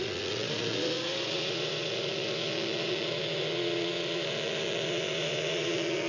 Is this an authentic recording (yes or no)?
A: no